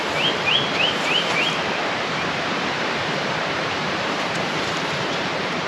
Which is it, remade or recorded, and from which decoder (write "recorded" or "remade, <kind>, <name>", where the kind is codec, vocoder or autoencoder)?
remade, vocoder, BigVGAN v2